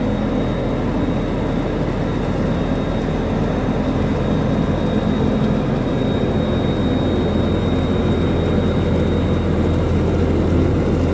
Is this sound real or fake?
real